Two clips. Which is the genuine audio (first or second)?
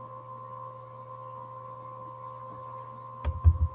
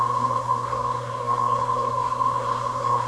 first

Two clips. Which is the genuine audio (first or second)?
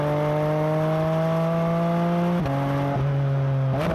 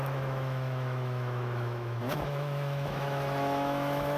first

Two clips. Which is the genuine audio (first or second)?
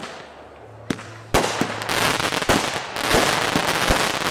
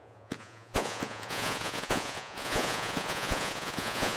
first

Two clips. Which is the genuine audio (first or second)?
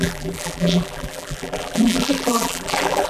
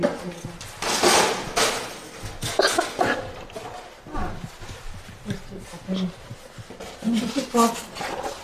second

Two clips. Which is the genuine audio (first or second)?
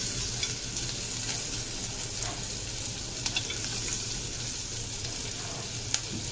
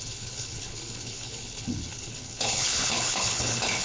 first